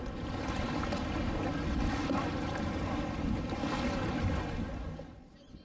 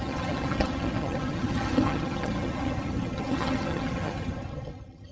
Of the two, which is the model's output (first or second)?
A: second